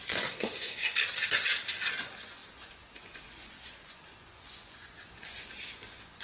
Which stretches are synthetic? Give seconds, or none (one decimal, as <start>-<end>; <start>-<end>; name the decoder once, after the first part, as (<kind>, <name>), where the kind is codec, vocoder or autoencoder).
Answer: 0.0-0.9 (vocoder, Vocos); 2.0-6.2